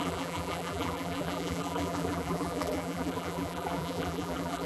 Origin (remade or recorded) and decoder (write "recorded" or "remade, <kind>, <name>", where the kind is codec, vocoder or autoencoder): remade, vocoder, BigVGAN v2